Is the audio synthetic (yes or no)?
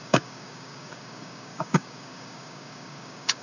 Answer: yes